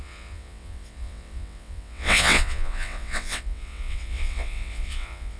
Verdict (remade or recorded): remade